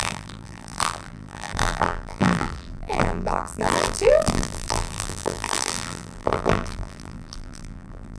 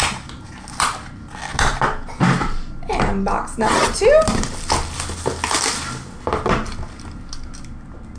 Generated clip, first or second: first